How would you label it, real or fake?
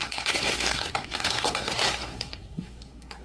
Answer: fake